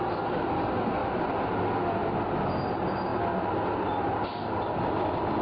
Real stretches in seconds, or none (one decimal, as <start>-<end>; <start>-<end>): 0.0-5.4